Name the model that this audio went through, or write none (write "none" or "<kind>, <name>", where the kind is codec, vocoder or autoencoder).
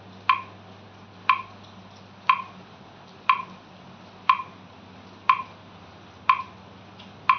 none